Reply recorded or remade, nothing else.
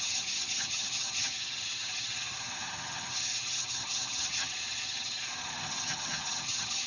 remade